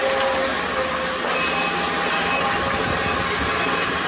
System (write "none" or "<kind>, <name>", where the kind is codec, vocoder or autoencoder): none